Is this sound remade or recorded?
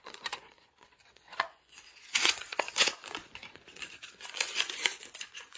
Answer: remade